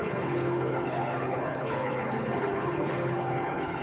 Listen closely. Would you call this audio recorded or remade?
remade